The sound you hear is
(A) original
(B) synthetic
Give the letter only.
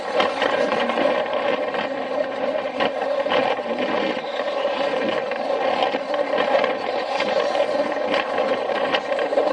B